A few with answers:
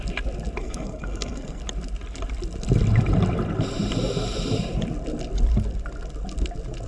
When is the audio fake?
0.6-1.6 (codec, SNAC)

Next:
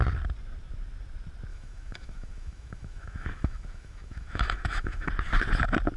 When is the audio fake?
1.5-5.1 (autoencoder, DAC-VAE)

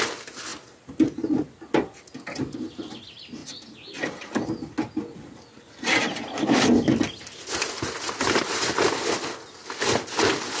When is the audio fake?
none

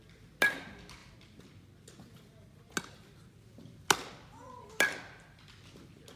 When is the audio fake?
none